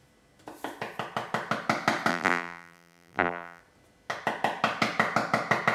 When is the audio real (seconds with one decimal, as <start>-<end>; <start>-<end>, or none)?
0.0-2.1; 3.6-5.7